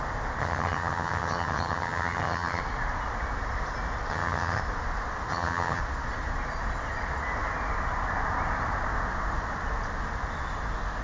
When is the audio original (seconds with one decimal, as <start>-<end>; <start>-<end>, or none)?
0.0-0.4; 2.6-4.1; 4.6-5.3; 5.8-11.0